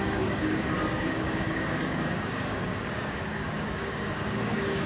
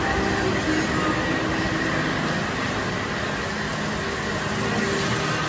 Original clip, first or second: second